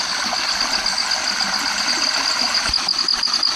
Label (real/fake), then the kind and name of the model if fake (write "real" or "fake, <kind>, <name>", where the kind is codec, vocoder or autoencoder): real